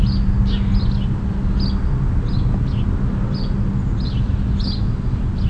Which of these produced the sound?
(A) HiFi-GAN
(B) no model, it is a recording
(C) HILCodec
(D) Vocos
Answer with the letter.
B